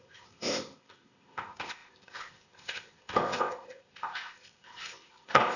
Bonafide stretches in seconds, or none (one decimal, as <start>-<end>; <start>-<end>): none